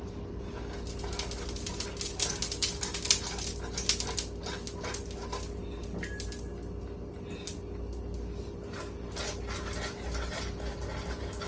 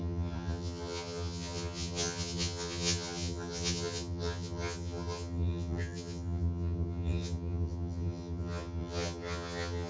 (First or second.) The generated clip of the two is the second